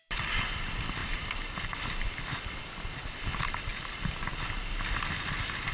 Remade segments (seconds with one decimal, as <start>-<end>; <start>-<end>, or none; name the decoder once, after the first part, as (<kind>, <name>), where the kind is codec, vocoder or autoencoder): none